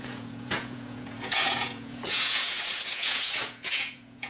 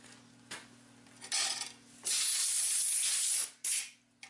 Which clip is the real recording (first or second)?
second